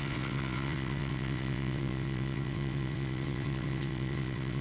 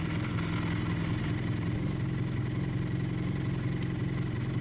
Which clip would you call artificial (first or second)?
first